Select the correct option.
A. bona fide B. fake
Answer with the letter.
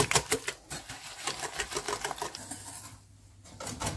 A